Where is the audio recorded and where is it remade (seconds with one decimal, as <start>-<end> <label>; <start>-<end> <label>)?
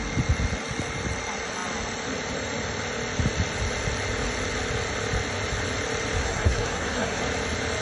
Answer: 0.0-6.2 recorded; 6.2-7.2 remade; 7.2-7.8 recorded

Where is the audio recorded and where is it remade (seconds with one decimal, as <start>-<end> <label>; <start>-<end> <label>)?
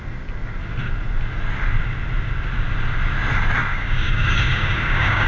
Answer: 0.0-3.7 recorded; 3.7-5.3 remade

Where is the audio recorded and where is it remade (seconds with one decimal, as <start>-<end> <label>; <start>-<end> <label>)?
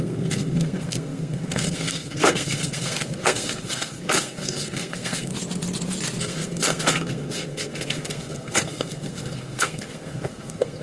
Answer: 0.0-5.3 remade; 5.3-6.2 recorded; 6.2-10.8 remade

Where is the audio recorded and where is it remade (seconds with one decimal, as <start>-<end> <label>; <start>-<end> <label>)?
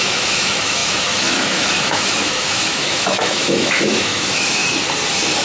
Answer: 0.0-4.6 remade; 4.6-5.4 recorded